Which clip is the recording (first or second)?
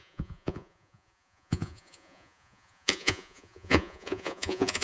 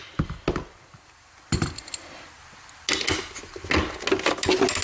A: second